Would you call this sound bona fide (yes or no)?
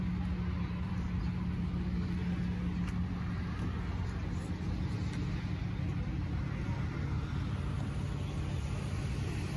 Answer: yes